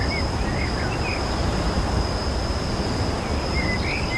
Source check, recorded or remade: recorded